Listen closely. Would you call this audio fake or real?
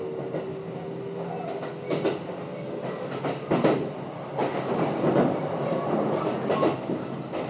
real